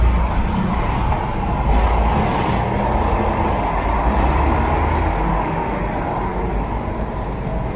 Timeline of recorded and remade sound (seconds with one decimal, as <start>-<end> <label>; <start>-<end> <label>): 0.0-5.3 recorded; 5.3-5.8 remade; 5.8-7.8 recorded